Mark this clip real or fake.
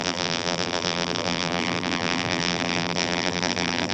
fake